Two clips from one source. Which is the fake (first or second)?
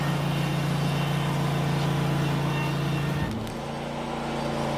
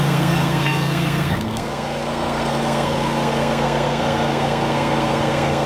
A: second